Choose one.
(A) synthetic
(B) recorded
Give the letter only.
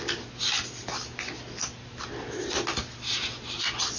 B